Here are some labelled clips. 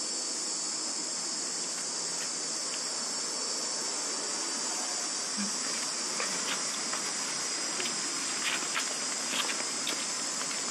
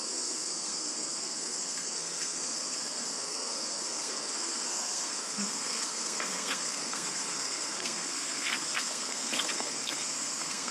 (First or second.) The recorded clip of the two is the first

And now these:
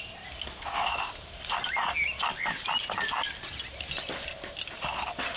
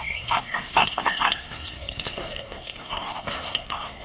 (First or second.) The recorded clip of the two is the first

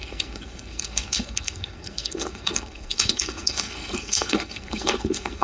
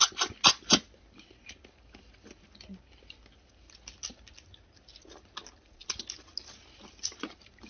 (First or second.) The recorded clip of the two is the second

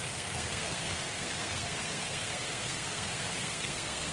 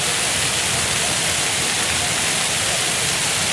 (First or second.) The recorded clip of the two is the second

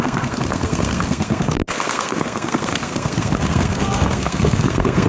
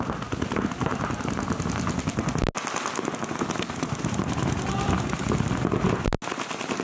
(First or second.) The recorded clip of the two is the second